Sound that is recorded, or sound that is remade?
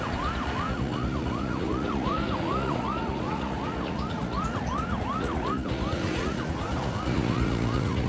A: remade